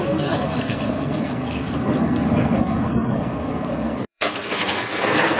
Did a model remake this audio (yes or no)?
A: yes